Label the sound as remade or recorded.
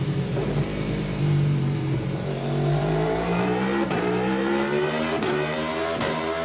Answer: remade